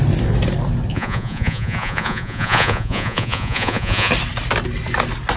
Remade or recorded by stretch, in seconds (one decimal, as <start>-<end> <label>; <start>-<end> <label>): 0.0-0.9 recorded; 0.9-4.1 remade; 4.1-5.4 recorded